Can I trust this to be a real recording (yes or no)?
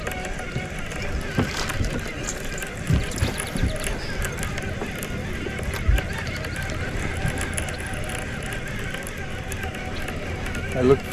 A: yes